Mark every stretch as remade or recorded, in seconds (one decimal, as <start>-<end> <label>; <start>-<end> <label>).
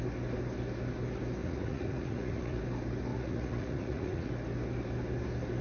0.0-1.4 recorded; 1.4-2.6 remade; 2.6-3.1 recorded; 3.1-4.3 remade; 4.3-5.6 recorded